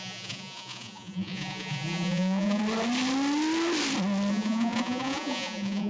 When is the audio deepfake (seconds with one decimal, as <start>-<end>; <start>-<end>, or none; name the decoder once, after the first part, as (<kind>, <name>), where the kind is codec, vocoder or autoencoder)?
0.0-2.6 (vocoder, Vocos); 4.3-5.9